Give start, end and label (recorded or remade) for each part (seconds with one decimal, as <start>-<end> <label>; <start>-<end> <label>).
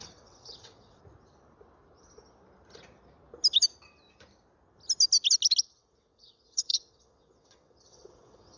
0.0-1.0 remade; 1.0-5.6 recorded; 5.6-8.6 remade